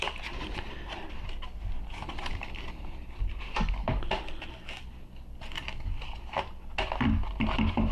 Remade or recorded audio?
recorded